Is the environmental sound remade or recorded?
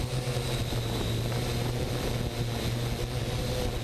recorded